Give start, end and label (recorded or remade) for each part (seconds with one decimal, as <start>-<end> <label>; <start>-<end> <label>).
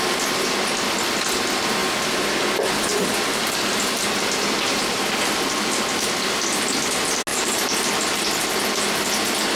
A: 0.0-2.9 recorded; 2.9-5.0 remade; 5.0-7.3 recorded; 7.3-7.9 remade; 7.9-9.6 recorded